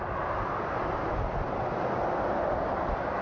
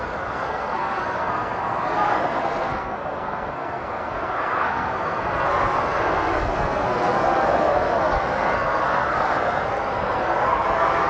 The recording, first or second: first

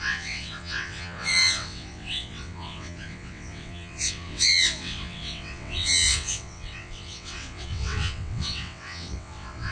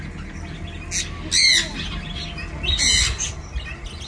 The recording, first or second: second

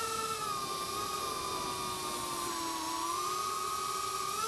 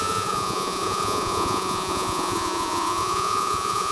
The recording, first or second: first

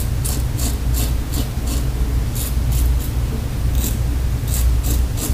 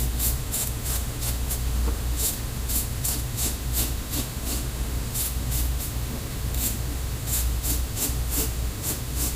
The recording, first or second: first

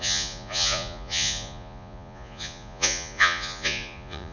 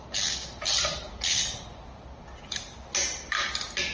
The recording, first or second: second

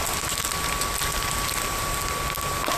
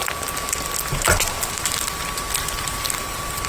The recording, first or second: first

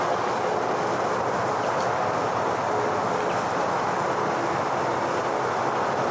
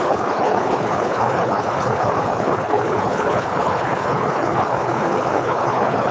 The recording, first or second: first